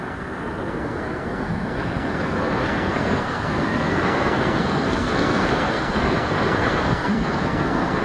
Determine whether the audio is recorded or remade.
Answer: remade